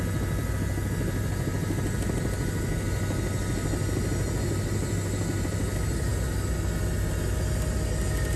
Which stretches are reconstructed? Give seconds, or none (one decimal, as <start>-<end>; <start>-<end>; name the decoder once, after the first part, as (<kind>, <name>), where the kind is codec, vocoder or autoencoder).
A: none